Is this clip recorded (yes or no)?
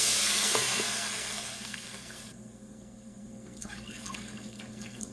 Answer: no